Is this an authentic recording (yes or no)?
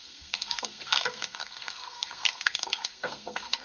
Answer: no